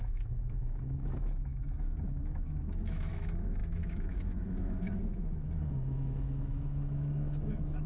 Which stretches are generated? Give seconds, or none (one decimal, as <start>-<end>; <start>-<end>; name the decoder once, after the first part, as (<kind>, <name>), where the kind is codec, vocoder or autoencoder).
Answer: 0.0-7.9 (autoencoder, DAC-VAE)